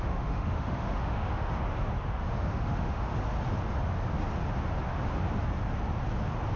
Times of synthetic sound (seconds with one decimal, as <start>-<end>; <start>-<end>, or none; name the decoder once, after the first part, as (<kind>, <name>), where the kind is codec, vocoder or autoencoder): 0.0-1.5 (autoencoder, DAC-VAE); 2.3-3.1